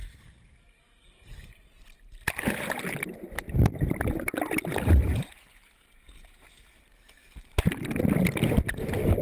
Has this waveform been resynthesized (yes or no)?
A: no